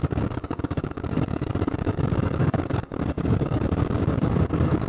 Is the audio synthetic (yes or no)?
yes